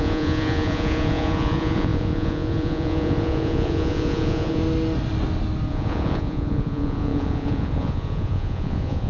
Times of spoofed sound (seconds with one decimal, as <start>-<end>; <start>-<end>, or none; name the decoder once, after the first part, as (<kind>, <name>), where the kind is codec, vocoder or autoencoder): 0.0-4.6 (vocoder, Vocos); 5.7-9.1